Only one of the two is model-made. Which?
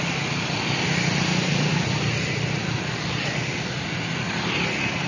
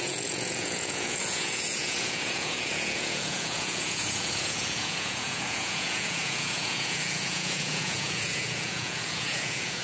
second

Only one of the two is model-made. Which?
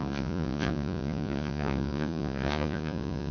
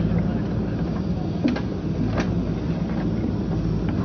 first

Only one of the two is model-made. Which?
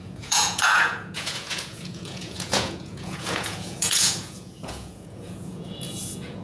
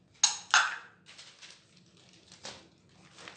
first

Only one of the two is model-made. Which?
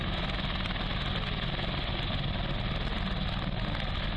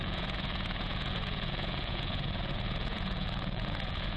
second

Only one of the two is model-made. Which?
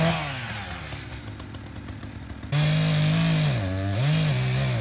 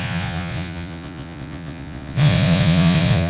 second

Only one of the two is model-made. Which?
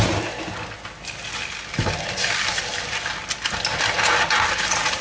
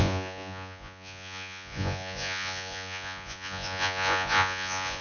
second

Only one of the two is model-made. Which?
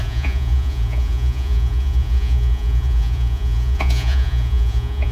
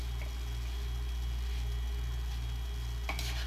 first